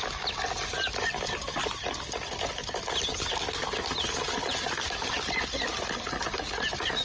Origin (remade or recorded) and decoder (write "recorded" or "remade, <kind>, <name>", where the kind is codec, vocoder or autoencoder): recorded